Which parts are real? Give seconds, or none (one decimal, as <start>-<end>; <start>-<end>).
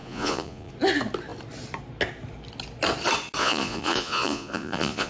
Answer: 0.7-3.4